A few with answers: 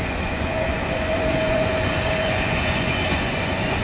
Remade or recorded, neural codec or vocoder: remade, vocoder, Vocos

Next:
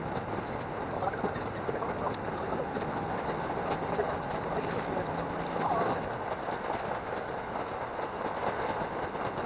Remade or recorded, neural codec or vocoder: recorded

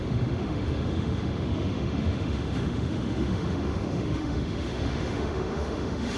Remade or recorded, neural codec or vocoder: remade, autoencoder, DAC-VAE